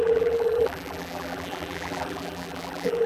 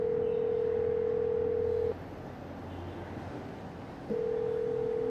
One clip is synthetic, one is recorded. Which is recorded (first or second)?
second